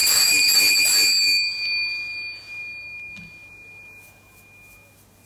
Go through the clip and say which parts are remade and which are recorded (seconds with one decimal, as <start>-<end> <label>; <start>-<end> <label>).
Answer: 0.0-0.6 remade; 0.6-5.3 recorded